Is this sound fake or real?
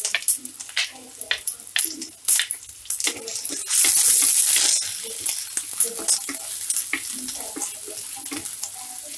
real